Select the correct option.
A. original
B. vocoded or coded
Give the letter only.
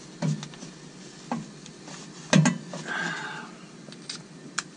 A